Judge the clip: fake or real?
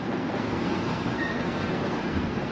fake